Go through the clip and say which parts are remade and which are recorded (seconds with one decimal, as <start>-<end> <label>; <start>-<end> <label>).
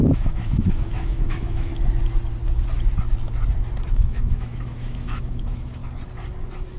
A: 0.0-1.7 remade; 1.7-3.9 recorded; 3.9-5.8 remade; 5.8-6.8 recorded